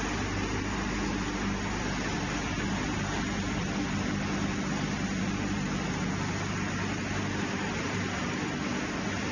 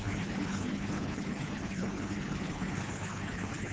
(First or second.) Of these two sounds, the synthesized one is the second